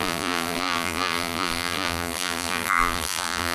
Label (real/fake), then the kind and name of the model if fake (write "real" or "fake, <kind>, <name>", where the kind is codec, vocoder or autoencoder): fake, vocoder, BigVGAN v2